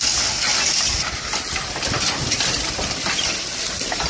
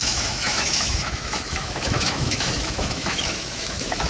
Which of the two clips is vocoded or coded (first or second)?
second